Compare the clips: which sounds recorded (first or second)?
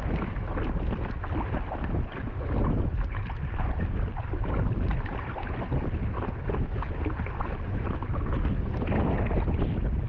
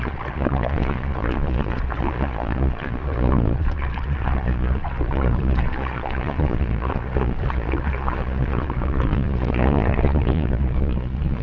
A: first